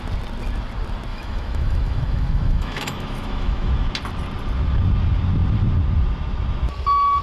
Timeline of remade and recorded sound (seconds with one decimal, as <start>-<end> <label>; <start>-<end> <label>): 0.0-1.1 recorded; 1.1-3.7 remade; 3.7-7.2 recorded